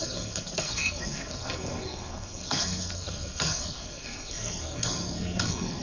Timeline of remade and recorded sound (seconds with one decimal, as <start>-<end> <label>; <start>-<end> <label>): 0.0-5.8 remade